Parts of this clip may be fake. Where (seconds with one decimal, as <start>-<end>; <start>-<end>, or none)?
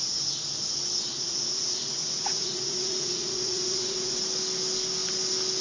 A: 1.1-4.2